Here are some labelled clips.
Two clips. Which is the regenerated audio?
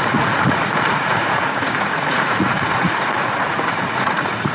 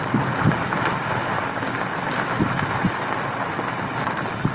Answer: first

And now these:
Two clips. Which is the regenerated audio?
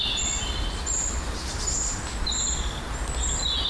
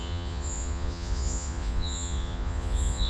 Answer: second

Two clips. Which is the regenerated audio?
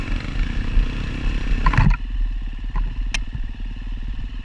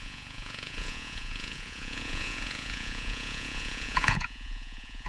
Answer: second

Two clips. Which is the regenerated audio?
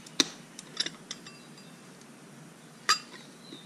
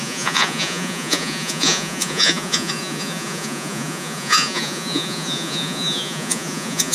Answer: second